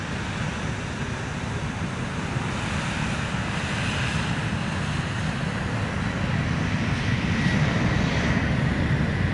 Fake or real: real